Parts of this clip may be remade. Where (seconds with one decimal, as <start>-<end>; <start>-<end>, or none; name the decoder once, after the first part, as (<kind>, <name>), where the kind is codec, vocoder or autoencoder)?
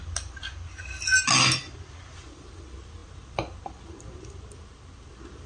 none